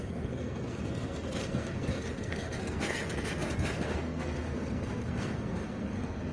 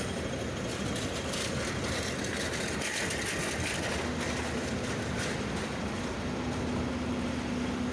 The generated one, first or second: first